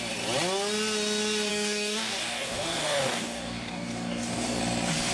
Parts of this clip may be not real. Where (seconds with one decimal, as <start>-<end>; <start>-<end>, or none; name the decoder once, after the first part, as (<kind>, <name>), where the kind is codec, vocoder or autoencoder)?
1.5-4.6 (codec, DAC)